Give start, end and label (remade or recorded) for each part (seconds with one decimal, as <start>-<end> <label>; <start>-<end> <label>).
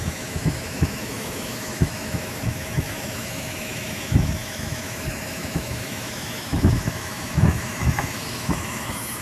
0.0-9.2 remade